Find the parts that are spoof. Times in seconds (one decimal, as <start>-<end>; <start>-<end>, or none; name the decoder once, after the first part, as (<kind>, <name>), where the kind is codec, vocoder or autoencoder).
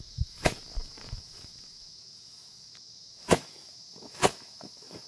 0.0-5.1 (autoencoder, DAC-VAE)